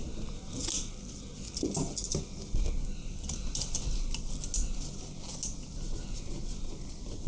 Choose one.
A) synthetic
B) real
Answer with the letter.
B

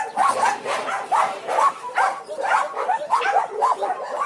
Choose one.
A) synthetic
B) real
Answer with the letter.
B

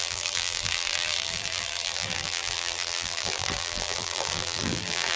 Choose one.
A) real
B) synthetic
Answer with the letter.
B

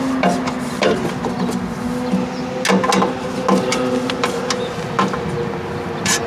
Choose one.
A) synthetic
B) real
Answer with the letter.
B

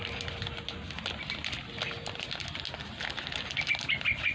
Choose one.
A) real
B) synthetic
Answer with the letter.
A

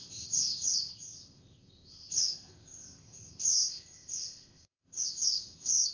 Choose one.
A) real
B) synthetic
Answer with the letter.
B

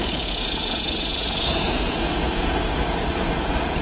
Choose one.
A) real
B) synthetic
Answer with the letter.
B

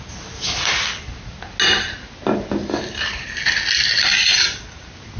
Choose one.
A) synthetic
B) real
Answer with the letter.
B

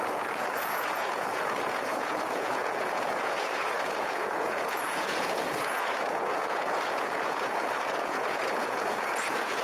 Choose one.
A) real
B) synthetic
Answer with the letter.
B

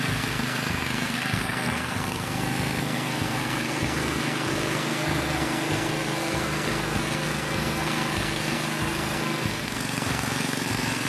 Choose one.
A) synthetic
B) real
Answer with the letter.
A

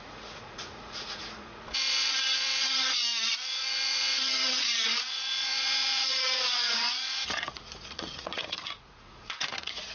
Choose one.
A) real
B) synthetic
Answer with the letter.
B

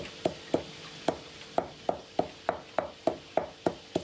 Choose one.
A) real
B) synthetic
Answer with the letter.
A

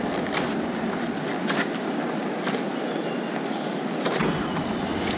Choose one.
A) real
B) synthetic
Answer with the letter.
A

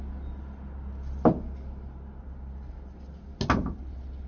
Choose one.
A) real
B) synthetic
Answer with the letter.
A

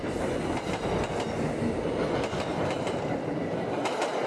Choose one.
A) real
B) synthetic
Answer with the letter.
A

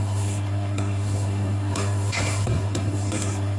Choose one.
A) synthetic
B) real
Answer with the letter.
A